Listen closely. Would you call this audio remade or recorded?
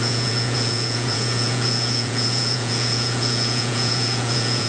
remade